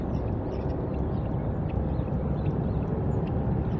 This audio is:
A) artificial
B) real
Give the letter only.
B